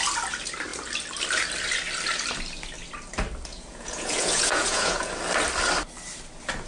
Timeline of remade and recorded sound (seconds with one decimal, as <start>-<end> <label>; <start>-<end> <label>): 0.0-3.5 recorded; 3.5-5.1 remade; 5.1-6.7 recorded